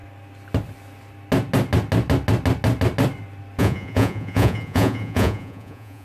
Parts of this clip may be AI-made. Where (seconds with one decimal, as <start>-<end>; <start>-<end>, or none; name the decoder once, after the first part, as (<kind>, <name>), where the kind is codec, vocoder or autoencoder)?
3.6-6.0 (vocoder, Vocos)